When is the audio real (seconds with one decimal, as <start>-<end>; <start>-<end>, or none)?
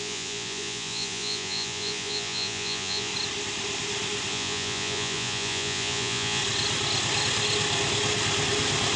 3.1-4.3; 6.4-9.0